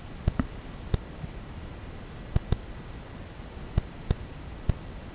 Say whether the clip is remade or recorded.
recorded